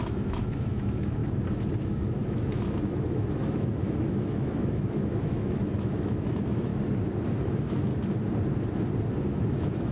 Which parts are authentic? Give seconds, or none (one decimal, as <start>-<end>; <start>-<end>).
1.2-1.8; 6.7-7.4; 7.9-9.3